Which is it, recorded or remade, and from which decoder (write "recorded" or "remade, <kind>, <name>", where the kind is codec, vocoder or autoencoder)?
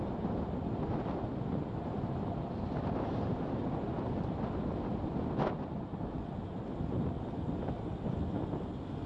recorded